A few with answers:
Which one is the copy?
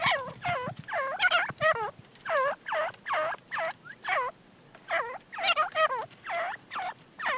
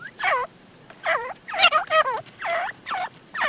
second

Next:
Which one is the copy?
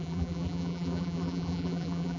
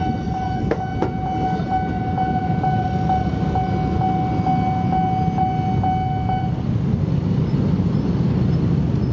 first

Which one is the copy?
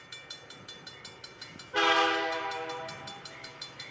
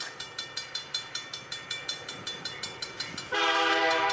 second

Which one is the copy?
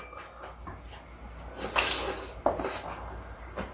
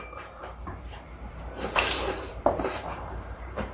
second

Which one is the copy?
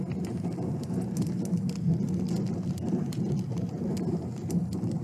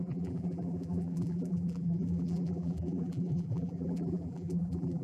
second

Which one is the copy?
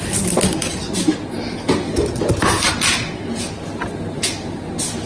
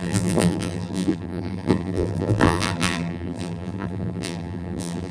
second